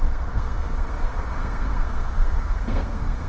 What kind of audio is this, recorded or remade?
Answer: remade